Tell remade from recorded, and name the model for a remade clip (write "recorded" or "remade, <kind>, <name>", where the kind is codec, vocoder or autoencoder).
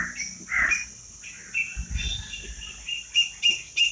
recorded